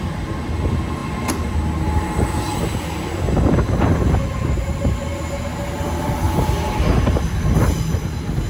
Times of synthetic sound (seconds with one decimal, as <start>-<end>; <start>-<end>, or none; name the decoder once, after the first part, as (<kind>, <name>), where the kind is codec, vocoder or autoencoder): none